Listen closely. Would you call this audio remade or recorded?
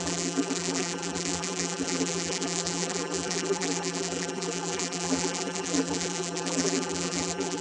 remade